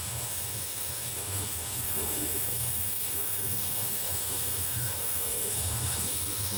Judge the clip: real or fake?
fake